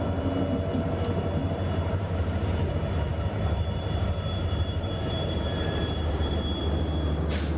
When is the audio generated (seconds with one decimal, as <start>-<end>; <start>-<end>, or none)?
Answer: 1.4-2.7; 3.1-6.6